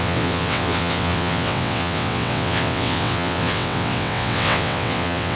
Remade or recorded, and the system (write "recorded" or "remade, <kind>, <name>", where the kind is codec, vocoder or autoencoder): remade, vocoder, WaveNeXt